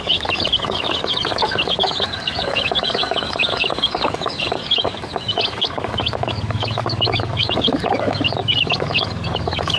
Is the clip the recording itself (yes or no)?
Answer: no